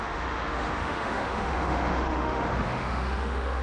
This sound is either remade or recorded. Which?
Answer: remade